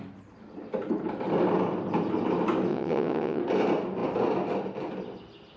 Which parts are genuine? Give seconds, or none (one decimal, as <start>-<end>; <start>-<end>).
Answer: 0.0-2.7; 3.4-5.6